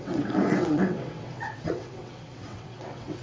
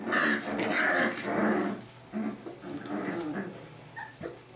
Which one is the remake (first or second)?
first